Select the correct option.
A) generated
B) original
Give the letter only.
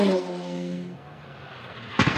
A